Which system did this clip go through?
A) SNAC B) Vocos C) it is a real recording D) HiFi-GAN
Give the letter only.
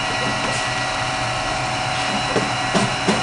C